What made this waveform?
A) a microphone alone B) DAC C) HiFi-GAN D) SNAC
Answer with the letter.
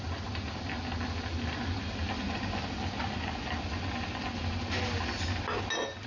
A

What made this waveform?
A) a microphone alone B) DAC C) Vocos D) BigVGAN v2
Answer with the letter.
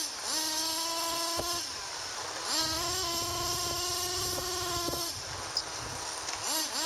A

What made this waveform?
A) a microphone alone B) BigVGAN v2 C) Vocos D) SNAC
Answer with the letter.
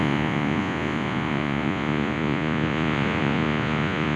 C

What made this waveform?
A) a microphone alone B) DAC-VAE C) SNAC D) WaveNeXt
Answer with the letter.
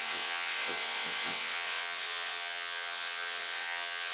D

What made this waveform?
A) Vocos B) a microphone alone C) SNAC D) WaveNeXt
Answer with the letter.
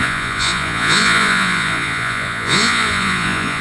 A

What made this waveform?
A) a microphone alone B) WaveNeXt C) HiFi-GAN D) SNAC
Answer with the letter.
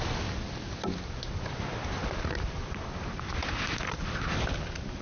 A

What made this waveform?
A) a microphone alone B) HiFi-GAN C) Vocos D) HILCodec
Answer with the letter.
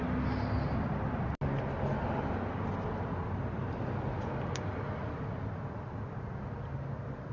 A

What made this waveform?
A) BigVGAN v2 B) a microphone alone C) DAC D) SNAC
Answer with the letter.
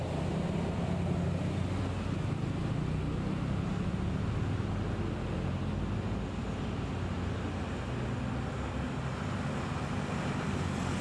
B